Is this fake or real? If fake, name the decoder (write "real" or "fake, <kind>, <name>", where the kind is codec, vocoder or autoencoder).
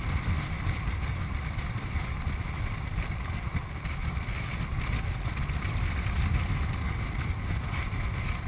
real